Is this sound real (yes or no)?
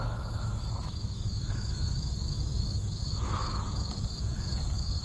no